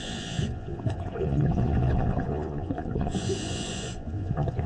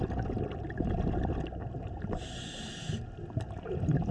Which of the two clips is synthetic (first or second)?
first